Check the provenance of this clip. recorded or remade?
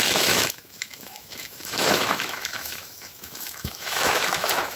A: remade